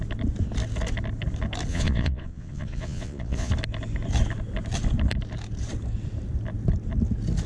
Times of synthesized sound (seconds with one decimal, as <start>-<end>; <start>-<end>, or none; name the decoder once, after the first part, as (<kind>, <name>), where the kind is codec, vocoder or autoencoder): 1.7-3.5 (vocoder, Vocos)